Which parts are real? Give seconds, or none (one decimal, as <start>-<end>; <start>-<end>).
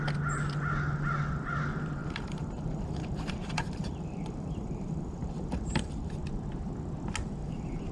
0.0-2.0; 6.2-7.4